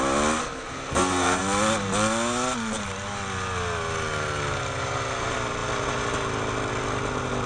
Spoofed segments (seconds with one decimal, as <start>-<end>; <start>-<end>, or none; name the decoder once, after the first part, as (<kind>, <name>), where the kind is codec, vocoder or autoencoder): 0.4-1.4 (codec, SNAC)